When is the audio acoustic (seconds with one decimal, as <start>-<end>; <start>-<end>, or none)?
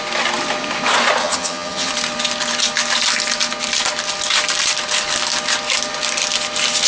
0.0-1.2; 1.9-6.9